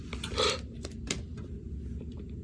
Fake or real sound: real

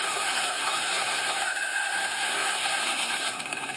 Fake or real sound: fake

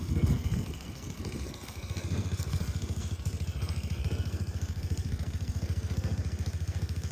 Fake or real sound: fake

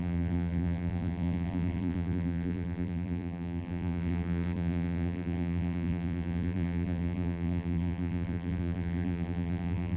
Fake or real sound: fake